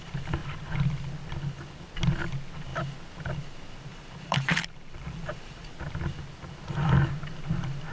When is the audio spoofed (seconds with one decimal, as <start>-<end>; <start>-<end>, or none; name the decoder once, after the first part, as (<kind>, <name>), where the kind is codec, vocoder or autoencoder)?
3.9-5.7 (vocoder, BigVGAN v2)